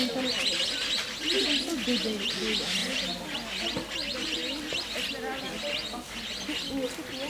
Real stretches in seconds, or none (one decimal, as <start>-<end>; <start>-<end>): 0.0-7.3